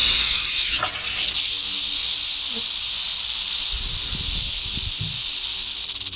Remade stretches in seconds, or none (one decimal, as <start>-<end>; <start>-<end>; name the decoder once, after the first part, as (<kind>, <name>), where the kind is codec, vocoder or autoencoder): 0.0-0.8 (autoencoder, DAC-VAE)